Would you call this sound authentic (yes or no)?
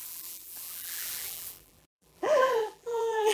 no